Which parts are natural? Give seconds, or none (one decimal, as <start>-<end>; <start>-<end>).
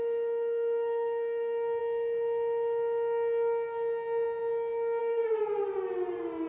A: 1.8-5.0; 5.4-6.5